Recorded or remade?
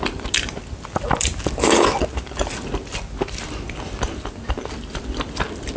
recorded